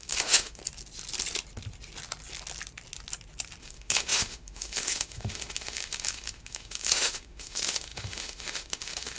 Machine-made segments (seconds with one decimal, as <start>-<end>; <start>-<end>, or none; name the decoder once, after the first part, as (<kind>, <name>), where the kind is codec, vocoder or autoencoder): 0.0-0.6 (autoencoder, DAC-VAE); 3.6-9.2